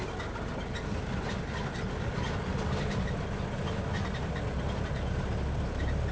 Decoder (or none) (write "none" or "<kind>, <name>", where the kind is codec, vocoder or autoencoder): none